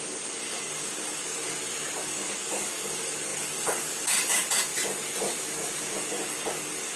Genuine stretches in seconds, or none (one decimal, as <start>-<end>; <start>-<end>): 1.4-2.0; 4.7-6.0